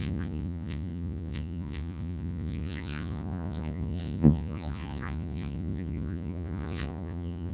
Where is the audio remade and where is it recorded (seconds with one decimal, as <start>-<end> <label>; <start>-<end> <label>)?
0.0-7.5 remade